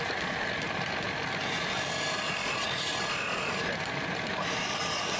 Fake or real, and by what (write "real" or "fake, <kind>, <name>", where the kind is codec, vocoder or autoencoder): real